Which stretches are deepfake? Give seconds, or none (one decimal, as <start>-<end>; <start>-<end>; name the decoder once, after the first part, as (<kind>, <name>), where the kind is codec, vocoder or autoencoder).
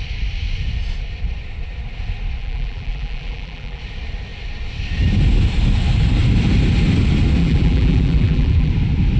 2.4-3.8 (vocoder, BigVGAN v2); 7.4-8.7